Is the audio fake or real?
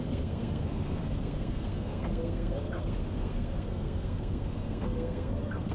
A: fake